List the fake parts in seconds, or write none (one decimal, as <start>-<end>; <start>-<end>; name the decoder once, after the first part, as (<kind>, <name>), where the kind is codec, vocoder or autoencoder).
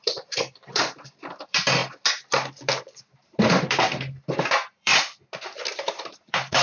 0.0-1.8 (vocoder, BigVGAN v2); 3.0-4.9; 5.4-6.6